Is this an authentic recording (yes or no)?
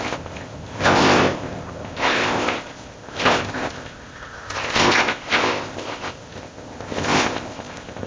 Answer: no